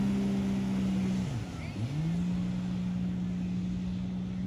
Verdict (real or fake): real